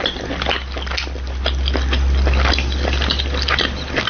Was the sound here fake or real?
real